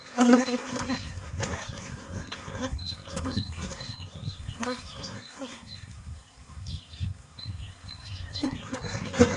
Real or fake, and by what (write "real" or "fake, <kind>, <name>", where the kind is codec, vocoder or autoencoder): fake, codec, SNAC